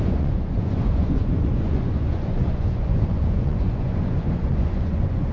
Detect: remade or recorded remade